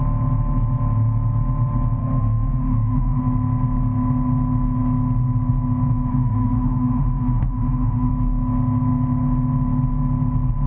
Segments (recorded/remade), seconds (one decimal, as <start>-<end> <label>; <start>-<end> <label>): 0.0-2.0 recorded; 2.0-3.2 remade; 3.2-6.1 recorded; 6.1-8.1 remade; 8.1-10.7 recorded